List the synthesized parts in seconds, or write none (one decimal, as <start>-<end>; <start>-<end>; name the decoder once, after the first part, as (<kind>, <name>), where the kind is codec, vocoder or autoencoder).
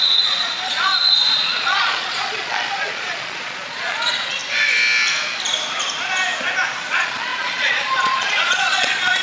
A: 0.0-4.4 (vocoder, Vocos); 6.8-9.2